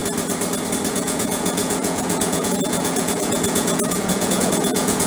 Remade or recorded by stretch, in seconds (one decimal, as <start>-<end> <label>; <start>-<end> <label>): 0.0-0.9 recorded; 0.9-5.1 remade